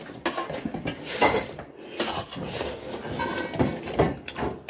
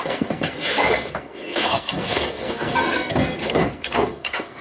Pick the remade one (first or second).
second